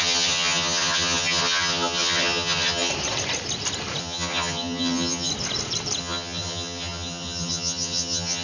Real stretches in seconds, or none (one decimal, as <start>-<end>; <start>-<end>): 2.9-4.0; 5.3-6.0